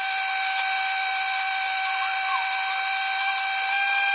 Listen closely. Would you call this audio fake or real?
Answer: real